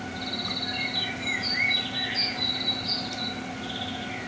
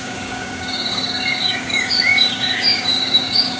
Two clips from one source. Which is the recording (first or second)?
first